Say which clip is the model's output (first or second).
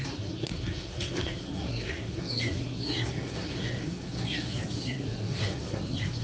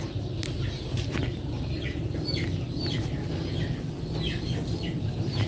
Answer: first